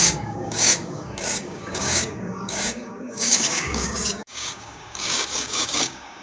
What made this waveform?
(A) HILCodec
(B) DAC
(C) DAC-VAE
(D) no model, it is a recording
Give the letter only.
B